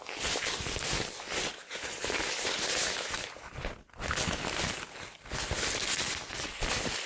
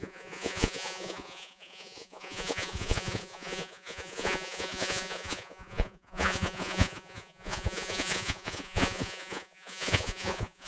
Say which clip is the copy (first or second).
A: second